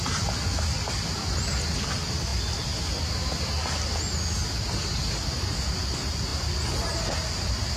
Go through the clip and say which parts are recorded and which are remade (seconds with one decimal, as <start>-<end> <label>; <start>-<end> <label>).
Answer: 0.0-7.8 recorded